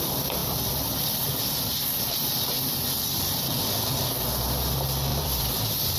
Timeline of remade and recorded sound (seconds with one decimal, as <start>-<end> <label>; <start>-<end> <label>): 0.0-0.4 recorded; 0.4-4.0 remade; 4.0-5.1 recorded; 5.1-6.0 remade